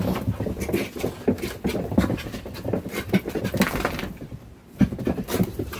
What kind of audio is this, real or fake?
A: real